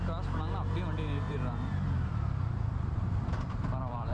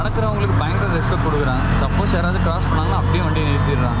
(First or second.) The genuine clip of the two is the second